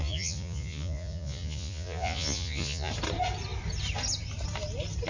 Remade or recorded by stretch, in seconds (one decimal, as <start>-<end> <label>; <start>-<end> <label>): 0.0-2.9 remade; 2.9-5.1 recorded